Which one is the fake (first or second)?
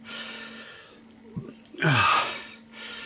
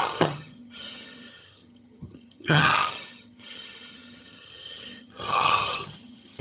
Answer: second